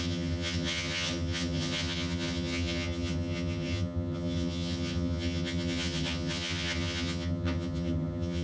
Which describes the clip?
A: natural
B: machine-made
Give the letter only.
B